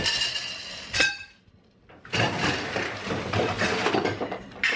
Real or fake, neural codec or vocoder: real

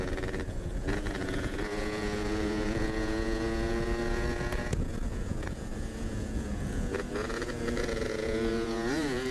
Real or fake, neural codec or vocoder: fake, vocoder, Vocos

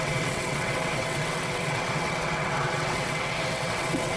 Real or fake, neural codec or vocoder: fake, vocoder, WaveNeXt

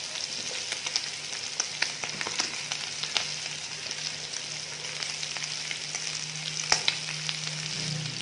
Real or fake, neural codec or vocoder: real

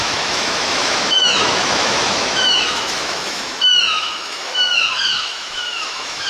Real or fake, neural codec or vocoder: fake, autoencoder, DAC-VAE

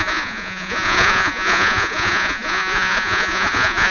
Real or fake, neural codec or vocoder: fake, vocoder, Vocos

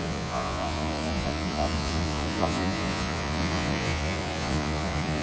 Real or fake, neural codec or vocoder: fake, vocoder, Vocos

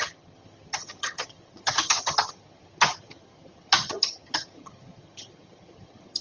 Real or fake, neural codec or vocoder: fake, vocoder, HiFi-GAN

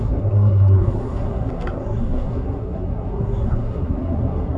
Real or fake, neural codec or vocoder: fake, codec, SNAC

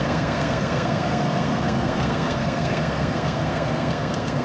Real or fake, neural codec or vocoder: fake, codec, SNAC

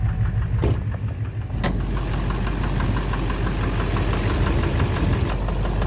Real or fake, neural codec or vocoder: real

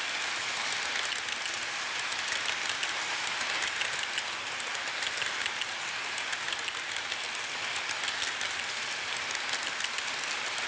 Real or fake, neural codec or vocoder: real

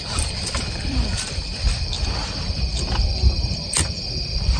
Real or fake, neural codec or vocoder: fake, vocoder, BigVGAN v2